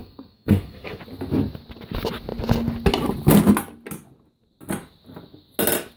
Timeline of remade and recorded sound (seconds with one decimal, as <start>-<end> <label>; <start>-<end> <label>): 0.0-1.0 remade; 1.0-6.0 recorded